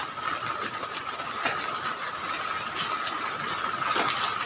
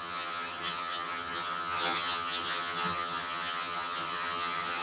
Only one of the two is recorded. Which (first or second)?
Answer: first